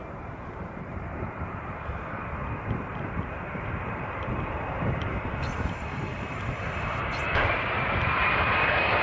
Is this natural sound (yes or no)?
no